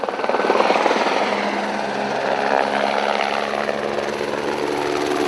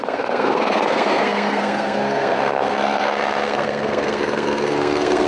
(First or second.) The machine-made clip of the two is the second